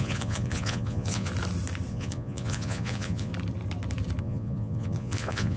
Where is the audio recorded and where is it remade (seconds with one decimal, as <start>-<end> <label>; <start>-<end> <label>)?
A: 0.0-1.3 remade; 1.3-1.9 recorded; 1.9-3.3 remade; 3.3-4.2 recorded; 4.2-5.6 remade